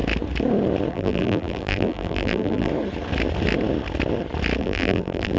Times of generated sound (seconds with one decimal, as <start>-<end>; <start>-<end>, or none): 0.9-2.7; 4.6-5.4